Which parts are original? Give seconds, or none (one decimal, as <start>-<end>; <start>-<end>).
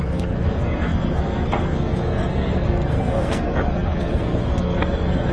none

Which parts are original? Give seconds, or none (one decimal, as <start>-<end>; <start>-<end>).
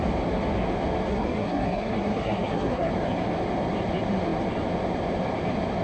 0.0-1.1; 2.9-5.8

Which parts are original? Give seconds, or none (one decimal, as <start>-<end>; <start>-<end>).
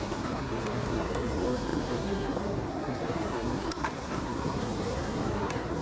none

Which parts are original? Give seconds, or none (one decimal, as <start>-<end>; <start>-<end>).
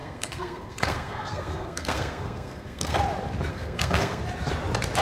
3.0-3.5; 4.2-5.0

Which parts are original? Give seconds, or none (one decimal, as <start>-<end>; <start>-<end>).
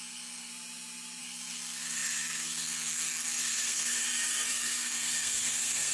0.5-1.2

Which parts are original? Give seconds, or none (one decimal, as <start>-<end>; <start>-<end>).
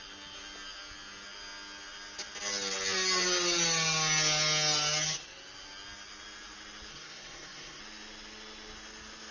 0.0-6.9; 7.8-9.3